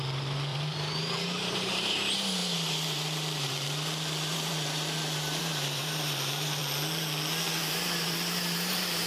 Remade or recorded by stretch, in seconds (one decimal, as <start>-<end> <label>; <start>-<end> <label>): 0.0-6.6 remade; 6.6-7.6 recorded; 7.6-9.1 remade